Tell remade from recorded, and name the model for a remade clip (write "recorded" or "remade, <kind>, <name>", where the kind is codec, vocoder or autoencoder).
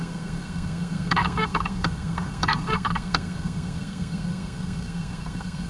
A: remade, codec, SNAC